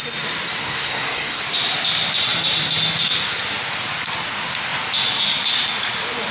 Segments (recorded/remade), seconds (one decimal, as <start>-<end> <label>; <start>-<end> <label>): 0.0-0.6 recorded; 0.6-1.4 remade; 1.4-6.3 recorded